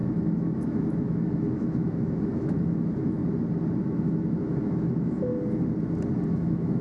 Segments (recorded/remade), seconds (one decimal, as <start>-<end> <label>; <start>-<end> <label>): 0.0-3.2 remade; 3.2-3.8 recorded; 3.8-5.3 remade; 5.3-6.3 recorded; 6.3-6.8 remade